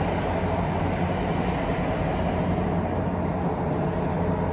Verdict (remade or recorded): recorded